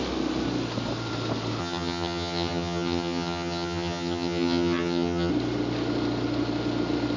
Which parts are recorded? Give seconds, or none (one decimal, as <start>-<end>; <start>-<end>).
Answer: 0.0-1.6; 5.3-7.2